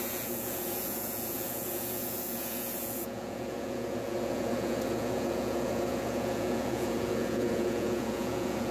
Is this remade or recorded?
remade